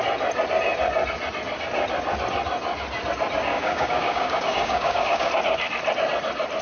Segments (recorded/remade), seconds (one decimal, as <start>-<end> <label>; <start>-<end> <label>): 0.0-3.5 recorded; 3.5-5.3 remade; 5.3-6.6 recorded